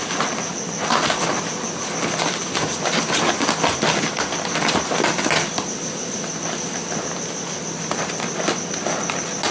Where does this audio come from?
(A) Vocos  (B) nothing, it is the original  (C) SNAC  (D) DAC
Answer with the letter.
B